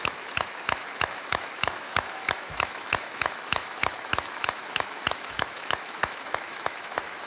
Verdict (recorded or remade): remade